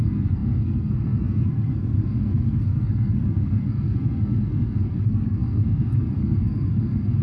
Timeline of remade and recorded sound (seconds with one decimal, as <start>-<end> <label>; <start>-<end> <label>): 0.0-7.2 remade